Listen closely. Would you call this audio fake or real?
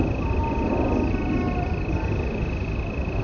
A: real